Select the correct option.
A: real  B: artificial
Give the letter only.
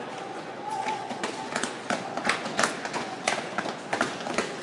B